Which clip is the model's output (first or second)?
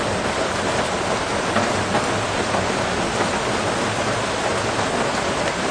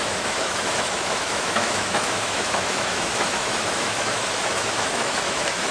second